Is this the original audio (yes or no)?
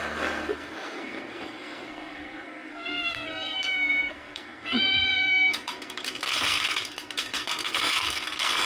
no